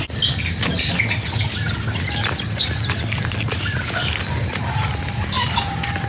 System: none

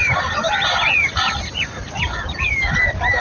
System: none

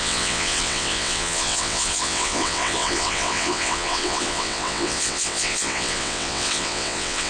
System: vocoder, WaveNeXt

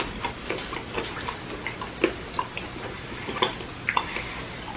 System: none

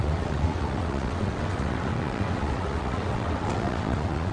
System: vocoder, WaveNeXt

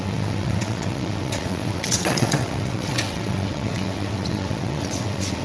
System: vocoder, WaveNeXt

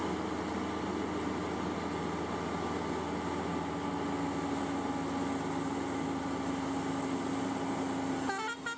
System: none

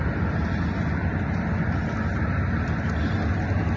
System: none